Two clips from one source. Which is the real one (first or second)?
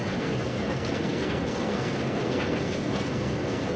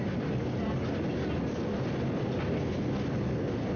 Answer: second